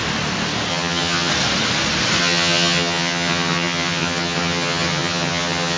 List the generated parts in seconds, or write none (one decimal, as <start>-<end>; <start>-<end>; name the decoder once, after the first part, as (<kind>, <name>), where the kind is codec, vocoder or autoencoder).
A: 0.7-1.3 (vocoder, HiFi-GAN); 2.2-5.8